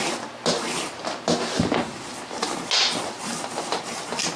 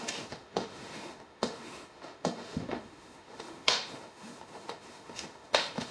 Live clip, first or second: first